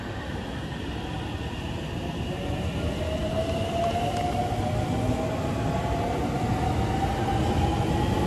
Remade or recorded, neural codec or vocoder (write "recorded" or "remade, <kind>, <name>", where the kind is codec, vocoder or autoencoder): recorded